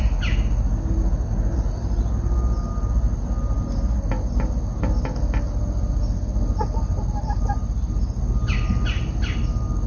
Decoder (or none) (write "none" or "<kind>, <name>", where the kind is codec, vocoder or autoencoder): none